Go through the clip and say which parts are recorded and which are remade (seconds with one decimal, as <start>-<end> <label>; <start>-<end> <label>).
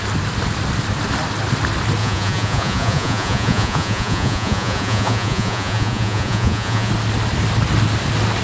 0.0-2.0 recorded; 2.0-6.9 remade; 6.9-8.4 recorded